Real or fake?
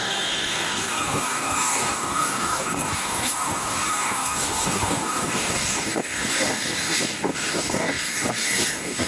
fake